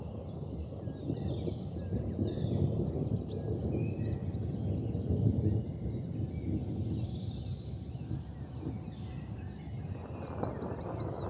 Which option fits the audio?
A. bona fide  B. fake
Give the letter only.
A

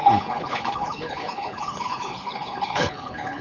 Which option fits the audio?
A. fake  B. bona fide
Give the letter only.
A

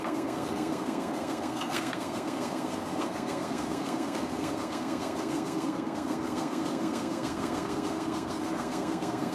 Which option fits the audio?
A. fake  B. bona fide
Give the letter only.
A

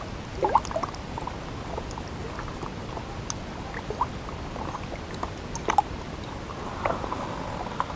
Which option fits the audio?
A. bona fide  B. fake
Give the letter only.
A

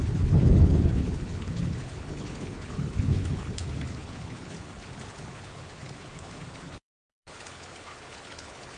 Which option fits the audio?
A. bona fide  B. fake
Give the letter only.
B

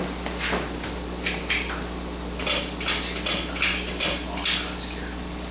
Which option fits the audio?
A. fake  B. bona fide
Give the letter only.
B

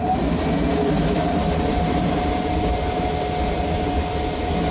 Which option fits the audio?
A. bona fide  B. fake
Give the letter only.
A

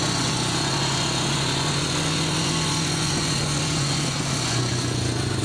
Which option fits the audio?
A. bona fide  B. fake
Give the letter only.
B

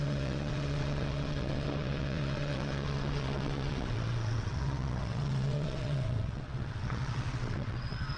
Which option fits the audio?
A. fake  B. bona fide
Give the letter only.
A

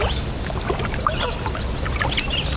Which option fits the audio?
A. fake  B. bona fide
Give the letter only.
B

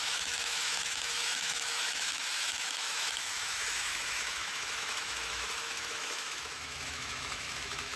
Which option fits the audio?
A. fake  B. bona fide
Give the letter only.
A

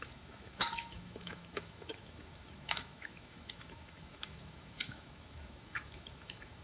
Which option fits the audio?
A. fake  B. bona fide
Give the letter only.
A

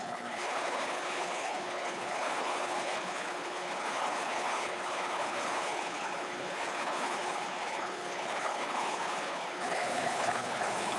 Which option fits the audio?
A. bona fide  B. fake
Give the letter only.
B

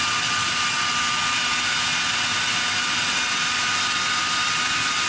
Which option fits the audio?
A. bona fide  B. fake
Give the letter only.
A